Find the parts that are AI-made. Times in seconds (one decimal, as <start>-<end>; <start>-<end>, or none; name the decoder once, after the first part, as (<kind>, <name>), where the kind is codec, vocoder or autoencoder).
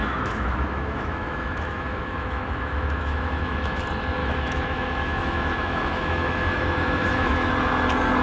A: 0.0-3.8 (autoencoder, DAC-VAE); 4.2-7.5